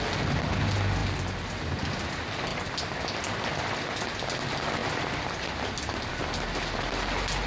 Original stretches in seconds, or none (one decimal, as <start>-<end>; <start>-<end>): 0.0-1.0; 1.6-4.8; 6.1-7.5